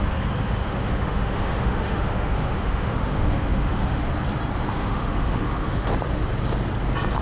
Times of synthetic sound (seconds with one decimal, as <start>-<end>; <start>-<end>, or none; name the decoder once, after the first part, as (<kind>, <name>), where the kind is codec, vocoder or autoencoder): 0.4-4.0 (autoencoder, DAC-VAE); 4.7-5.9